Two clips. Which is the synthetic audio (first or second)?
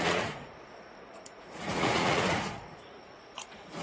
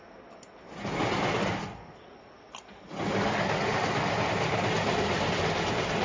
first